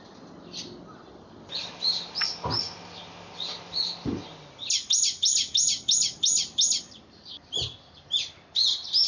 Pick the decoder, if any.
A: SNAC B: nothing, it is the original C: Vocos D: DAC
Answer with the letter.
B